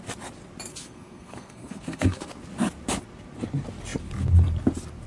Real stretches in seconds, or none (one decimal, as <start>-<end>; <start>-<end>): 0.0-0.7; 2.3-5.1